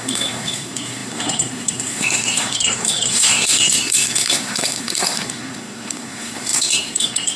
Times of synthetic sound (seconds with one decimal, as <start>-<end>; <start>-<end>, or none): 0.0-7.4